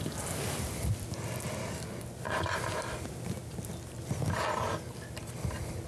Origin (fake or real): real